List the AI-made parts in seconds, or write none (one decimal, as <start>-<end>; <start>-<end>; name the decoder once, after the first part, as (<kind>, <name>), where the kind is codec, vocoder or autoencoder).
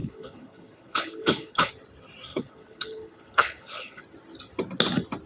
0.0-1.7 (codec, HILCodec); 2.3-4.0